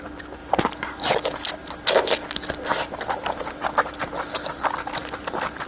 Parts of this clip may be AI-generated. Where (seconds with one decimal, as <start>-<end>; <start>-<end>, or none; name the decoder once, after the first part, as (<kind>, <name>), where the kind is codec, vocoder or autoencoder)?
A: none